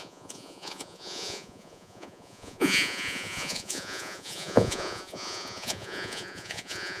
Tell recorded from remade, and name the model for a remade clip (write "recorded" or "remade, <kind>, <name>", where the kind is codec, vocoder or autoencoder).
remade, vocoder, Vocos